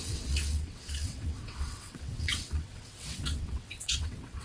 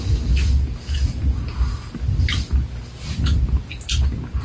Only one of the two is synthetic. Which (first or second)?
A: first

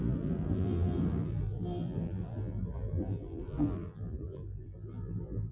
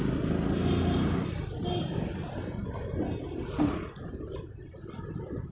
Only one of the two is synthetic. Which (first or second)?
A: first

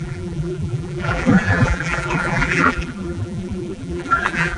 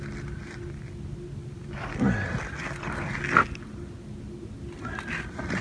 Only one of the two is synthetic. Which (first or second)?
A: first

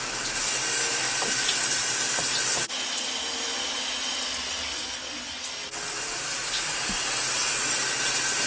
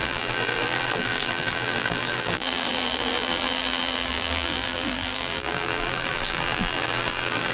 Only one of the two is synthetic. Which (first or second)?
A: second